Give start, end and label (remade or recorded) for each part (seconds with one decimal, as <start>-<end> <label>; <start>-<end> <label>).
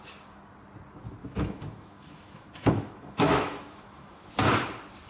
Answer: 0.0-1.2 recorded; 1.2-4.3 remade; 4.3-5.1 recorded